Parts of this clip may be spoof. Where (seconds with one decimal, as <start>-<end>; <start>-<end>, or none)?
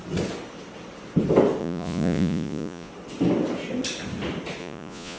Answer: 1.6-2.9; 4.6-5.2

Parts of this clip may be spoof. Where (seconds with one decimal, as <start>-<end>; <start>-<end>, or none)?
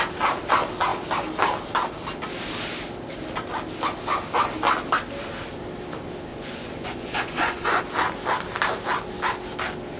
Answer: 6.3-7.8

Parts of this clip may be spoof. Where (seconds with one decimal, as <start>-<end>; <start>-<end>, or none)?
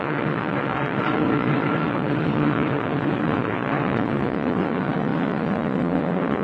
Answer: 0.0-6.4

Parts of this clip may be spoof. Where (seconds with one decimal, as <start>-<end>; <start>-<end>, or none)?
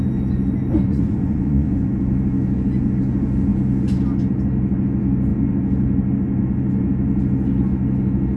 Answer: 0.9-1.9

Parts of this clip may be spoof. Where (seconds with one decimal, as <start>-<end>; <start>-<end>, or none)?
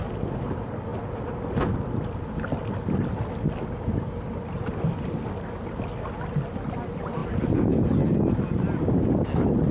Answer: none